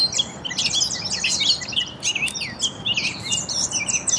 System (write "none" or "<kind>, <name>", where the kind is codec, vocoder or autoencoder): none